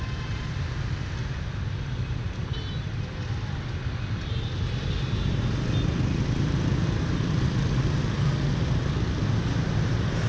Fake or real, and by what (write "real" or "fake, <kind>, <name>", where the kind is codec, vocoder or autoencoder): real